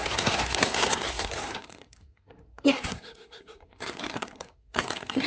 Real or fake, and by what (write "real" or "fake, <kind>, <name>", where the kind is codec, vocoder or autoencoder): fake, codec, SNAC